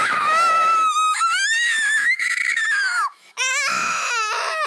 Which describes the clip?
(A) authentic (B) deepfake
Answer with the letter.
B